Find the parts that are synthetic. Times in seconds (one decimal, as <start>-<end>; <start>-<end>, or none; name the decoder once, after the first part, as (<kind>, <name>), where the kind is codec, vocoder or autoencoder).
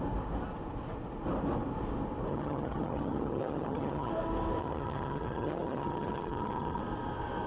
2.3-4.1 (vocoder, HiFi-GAN); 4.6-6.8